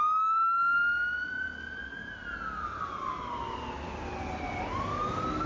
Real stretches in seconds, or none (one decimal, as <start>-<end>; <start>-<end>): 0.0-5.5